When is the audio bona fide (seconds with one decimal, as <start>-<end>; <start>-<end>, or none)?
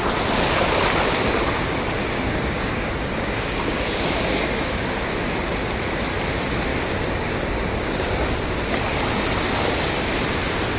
0.0-2.0; 5.0-6.7; 8.3-10.8